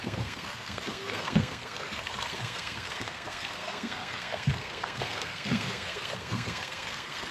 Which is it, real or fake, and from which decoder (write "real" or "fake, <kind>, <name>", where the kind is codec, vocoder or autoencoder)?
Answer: fake, codec, SNAC